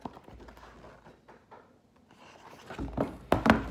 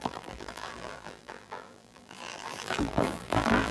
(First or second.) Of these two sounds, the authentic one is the first